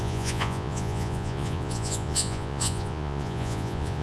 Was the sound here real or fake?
fake